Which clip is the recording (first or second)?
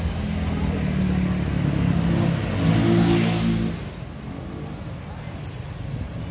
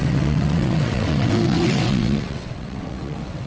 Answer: first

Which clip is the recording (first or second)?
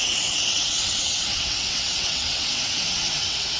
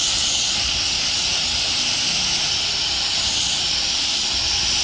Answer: second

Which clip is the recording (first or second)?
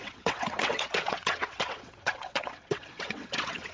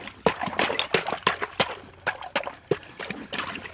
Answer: second